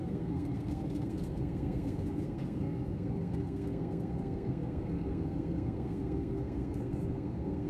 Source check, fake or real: fake